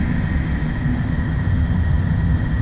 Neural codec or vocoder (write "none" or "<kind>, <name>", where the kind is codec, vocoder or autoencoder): none